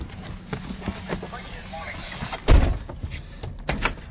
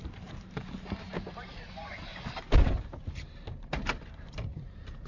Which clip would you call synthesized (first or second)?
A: second